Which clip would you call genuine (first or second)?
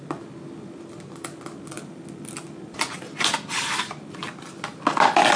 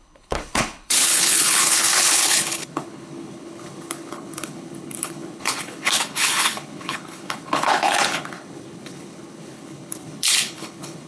first